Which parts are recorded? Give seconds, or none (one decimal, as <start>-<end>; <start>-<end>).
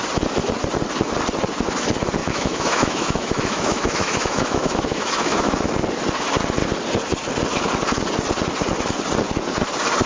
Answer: 0.0-2.2; 5.7-10.1